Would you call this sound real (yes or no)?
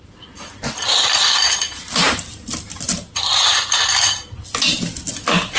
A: yes